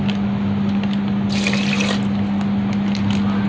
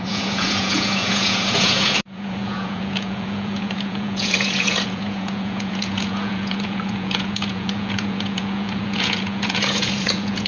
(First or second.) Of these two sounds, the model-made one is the second